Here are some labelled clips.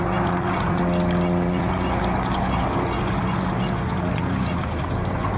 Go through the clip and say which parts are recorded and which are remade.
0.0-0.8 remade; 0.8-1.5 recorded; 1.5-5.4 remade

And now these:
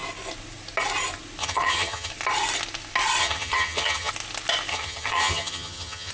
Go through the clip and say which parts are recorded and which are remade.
0.0-1.4 recorded; 1.4-2.1 remade; 2.1-3.2 recorded; 3.2-4.1 remade; 4.1-4.7 recorded; 4.7-6.1 remade

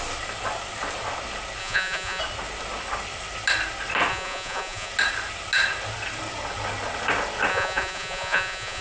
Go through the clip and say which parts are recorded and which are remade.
0.0-1.6 recorded; 1.6-2.2 remade; 2.2-4.1 recorded; 4.1-4.9 remade; 4.9-7.5 recorded; 7.5-8.8 remade

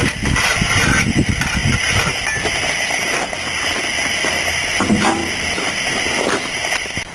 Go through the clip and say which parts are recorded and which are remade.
0.0-1.6 remade; 1.6-4.3 recorded; 4.3-7.1 remade

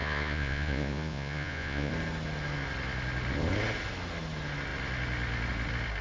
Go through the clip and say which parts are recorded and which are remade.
0.0-1.9 remade; 1.9-6.0 recorded